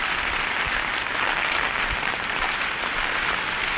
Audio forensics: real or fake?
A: real